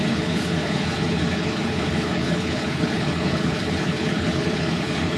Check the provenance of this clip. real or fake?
fake